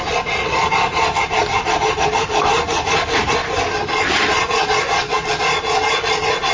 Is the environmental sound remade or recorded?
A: recorded